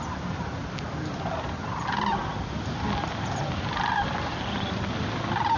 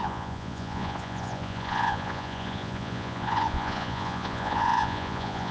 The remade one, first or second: second